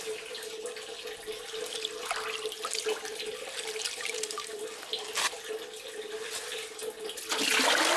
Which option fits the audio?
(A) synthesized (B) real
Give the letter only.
B